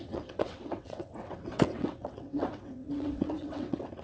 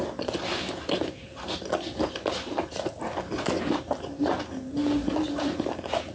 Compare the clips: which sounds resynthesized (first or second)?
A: first